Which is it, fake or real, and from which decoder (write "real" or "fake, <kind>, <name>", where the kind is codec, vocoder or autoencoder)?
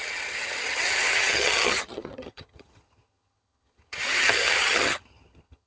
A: fake, vocoder, HiFi-GAN